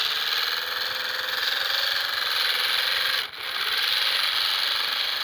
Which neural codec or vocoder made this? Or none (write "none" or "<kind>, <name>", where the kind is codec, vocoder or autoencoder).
none